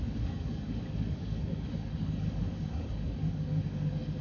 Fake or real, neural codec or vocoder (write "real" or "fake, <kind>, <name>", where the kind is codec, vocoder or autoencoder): fake, codec, DAC